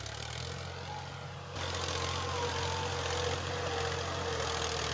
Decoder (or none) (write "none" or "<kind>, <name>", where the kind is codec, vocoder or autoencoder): none